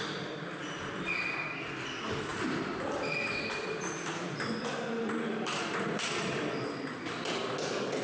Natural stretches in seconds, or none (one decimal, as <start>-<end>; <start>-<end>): 0.0-0.6; 1.7-2.3; 7.1-8.0